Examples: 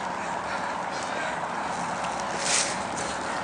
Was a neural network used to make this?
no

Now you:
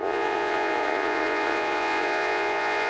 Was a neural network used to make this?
yes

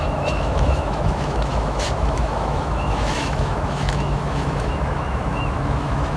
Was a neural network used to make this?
yes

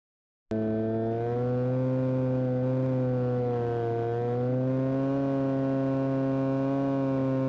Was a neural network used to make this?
no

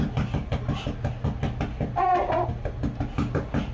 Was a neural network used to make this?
no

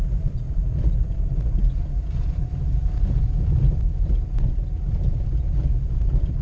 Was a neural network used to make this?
no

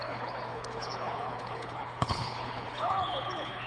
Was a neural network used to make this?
yes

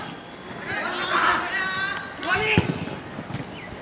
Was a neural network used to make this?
no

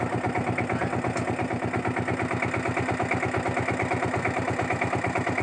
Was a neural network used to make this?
no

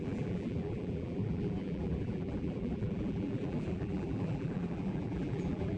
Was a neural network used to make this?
yes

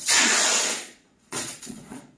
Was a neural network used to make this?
yes